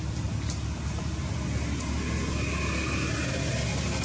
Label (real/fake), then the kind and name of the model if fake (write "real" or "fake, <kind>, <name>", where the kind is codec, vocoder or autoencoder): real